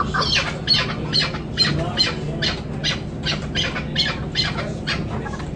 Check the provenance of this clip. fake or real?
real